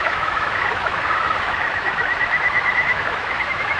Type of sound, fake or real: fake